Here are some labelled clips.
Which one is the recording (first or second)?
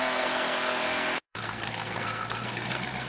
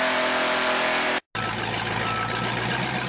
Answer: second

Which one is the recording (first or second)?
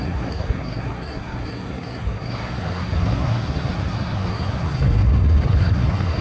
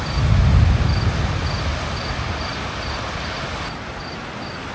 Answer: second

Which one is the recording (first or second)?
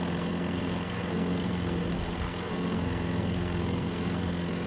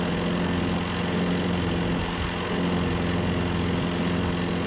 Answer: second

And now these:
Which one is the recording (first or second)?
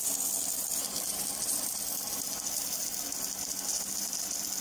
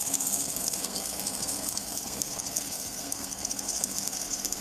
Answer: first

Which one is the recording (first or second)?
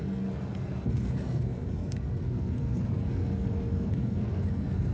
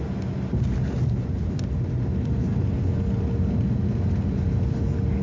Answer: second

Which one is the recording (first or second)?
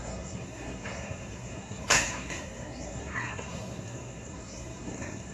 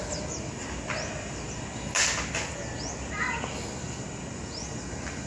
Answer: second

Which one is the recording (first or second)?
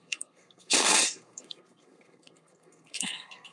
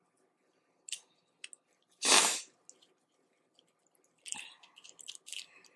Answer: second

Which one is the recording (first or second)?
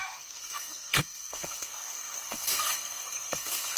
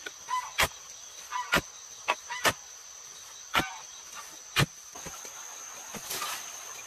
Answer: second